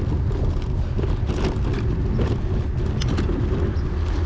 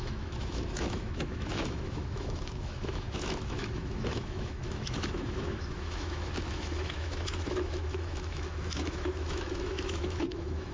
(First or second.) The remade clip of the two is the second